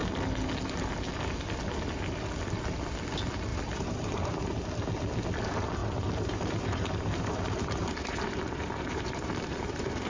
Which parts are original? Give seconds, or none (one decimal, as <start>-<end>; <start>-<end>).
0.0-3.5; 4.4-5.8